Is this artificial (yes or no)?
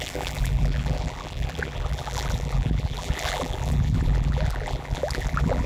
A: yes